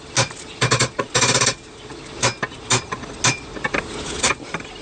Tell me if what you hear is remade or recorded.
recorded